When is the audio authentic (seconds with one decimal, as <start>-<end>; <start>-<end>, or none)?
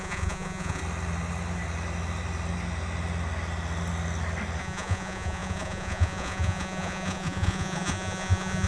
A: 0.8-4.6